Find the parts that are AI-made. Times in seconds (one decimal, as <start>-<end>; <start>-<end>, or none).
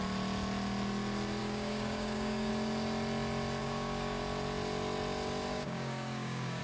1.4-2.5; 3.6-4.2; 5.5-6.6